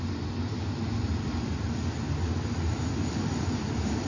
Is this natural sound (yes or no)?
yes